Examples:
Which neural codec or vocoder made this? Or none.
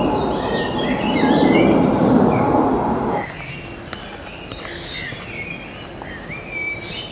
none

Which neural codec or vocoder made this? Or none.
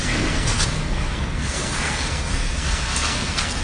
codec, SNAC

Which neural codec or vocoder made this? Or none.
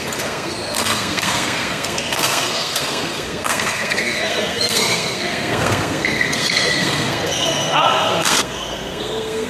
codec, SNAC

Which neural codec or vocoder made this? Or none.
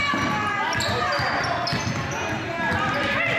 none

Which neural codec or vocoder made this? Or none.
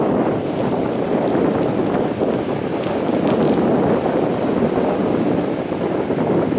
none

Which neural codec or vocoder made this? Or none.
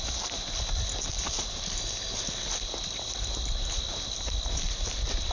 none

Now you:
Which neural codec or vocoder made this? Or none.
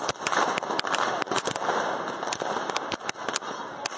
none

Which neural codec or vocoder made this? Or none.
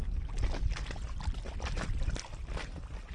none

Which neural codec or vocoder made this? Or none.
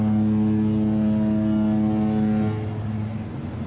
none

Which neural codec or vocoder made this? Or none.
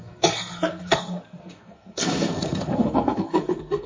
codec, SNAC